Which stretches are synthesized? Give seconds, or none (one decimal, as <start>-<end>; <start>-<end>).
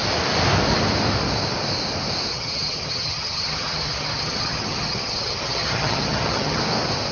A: 2.3-6.6